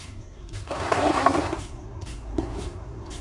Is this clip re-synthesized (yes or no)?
yes